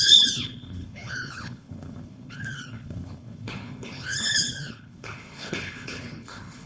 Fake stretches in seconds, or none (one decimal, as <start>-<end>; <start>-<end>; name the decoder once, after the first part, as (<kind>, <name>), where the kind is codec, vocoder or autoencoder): 0.0-6.7 (codec, HILCodec)